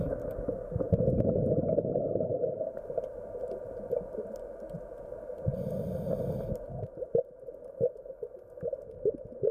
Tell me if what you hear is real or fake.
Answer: real